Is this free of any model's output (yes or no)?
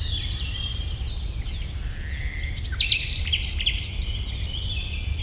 yes